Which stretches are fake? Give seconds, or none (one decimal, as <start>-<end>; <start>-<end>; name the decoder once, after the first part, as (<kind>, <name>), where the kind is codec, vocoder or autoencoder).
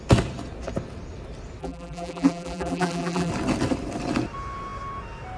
1.6-3.3 (vocoder, BigVGAN v2)